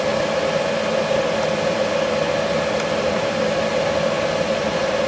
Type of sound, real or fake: real